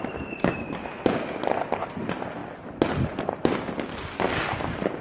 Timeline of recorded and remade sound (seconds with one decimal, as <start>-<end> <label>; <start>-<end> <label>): 0.0-5.0 recorded